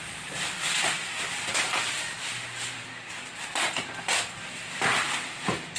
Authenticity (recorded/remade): remade